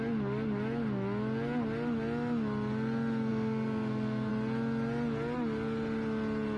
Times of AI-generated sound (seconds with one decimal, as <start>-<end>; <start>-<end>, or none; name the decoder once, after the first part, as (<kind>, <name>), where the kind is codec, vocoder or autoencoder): 3.3-4.3 (codec, SNAC)